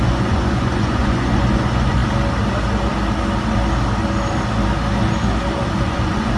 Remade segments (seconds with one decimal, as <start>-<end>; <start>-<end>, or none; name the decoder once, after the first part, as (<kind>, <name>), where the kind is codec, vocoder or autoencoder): 0.0-2.0 (vocoder, Vocos); 5.8-6.4